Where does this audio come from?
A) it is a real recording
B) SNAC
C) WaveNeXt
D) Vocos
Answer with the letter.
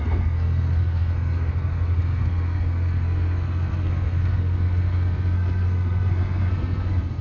B